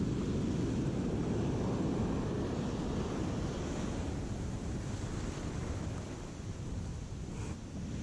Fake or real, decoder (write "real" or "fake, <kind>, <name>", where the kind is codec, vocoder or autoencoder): real